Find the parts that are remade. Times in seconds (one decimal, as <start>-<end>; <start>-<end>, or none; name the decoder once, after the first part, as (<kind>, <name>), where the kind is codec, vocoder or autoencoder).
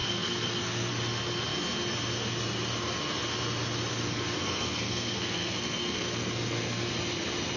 0.0-0.9 (codec, SNAC); 3.9-6.9